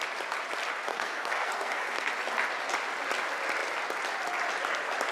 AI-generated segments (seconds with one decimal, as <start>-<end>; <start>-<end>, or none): 0.9-2.1